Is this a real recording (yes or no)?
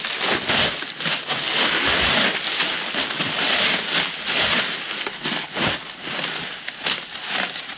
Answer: yes